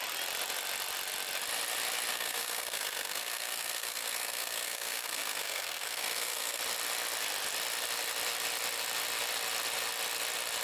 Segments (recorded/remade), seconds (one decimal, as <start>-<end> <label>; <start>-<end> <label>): 0.0-2.1 recorded; 2.1-6.6 remade; 6.6-10.6 recorded

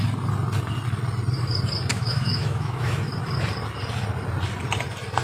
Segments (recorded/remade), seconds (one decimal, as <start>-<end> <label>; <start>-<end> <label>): 0.0-1.9 recorded; 1.9-3.1 remade; 3.1-5.2 recorded

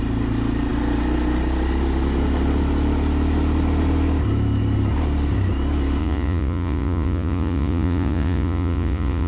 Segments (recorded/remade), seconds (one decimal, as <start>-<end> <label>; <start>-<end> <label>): 0.0-6.0 recorded; 6.0-9.3 remade

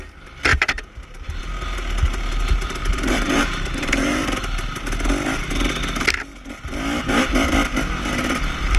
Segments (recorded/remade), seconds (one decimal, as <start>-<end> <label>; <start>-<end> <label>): 0.0-0.5 recorded; 0.5-1.4 remade; 1.4-2.8 recorded; 2.8-4.2 remade; 4.2-8.8 recorded